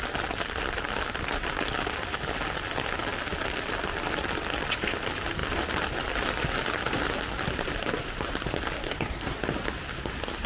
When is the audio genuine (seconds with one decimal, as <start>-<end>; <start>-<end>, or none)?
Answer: 0.0-8.8; 9.4-10.5